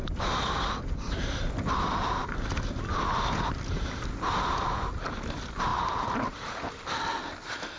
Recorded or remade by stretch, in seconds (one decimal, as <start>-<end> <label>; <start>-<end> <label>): 0.0-7.8 recorded